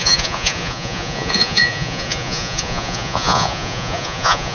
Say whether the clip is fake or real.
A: fake